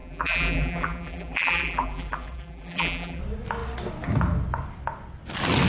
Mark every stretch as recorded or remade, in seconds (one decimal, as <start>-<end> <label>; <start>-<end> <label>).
0.0-3.2 remade; 3.2-5.7 recorded